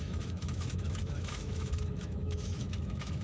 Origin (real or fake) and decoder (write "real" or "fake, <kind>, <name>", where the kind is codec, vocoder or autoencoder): fake, autoencoder, DAC-VAE